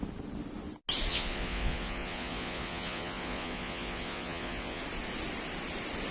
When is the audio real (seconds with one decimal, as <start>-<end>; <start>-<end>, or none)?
0.0-1.1; 4.8-6.1

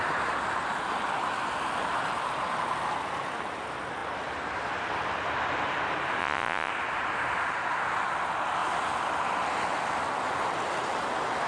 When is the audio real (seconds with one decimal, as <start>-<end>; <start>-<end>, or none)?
0.0-6.2; 6.7-11.5

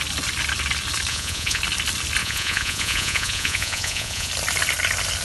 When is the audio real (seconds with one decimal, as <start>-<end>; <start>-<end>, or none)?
0.0-1.1; 1.6-2.2; 4.3-5.2

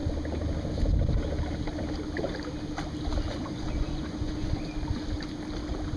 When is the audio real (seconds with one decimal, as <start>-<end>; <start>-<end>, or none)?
0.0-3.3; 4.6-6.0

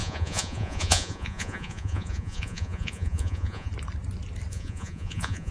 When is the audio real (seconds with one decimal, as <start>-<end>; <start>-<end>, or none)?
3.7-4.5

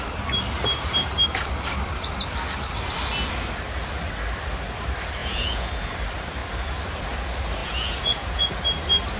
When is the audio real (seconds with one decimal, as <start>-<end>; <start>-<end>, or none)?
0.0-5.2; 5.7-7.6; 8.5-9.2

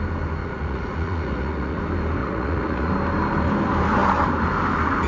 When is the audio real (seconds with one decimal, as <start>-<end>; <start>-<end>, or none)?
0.0-0.4; 1.8-2.2; 2.9-5.1